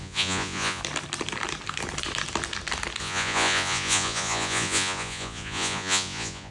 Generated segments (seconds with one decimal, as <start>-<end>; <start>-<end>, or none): 0.0-0.8; 3.0-6.5